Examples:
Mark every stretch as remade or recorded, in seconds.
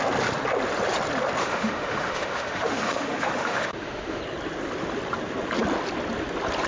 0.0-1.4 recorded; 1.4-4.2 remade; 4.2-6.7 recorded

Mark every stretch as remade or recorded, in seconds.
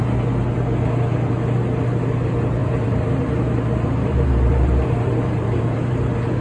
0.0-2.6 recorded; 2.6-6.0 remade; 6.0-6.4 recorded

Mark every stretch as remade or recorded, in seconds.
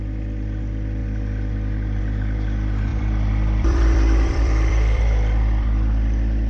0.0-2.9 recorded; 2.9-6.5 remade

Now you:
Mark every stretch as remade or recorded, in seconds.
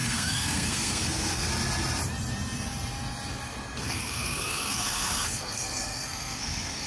0.0-1.5 remade; 1.5-3.8 recorded; 3.8-6.9 remade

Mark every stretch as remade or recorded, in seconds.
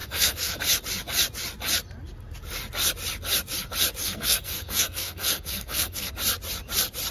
0.0-0.6 remade; 0.6-4.0 recorded; 4.0-6.1 remade; 6.1-7.1 recorded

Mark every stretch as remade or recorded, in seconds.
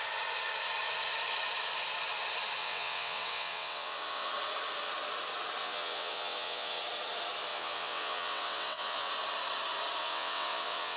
0.0-2.6 recorded; 2.6-4.3 remade; 4.3-5.6 recorded; 5.6-6.8 remade; 6.8-7.5 recorded; 7.5-9.1 remade; 9.1-10.0 recorded; 10.0-11.0 remade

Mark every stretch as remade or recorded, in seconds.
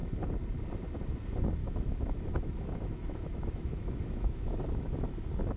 0.0-1.6 recorded; 1.6-5.0 remade; 5.0-5.6 recorded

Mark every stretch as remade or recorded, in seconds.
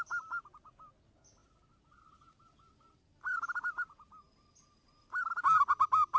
0.0-6.2 recorded